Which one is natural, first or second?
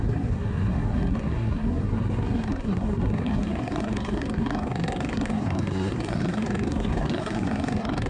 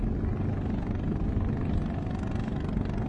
second